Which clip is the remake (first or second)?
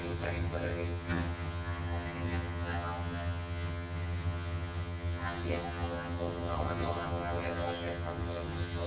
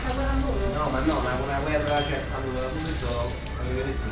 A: first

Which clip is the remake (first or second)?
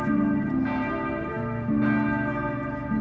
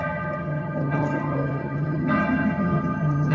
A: second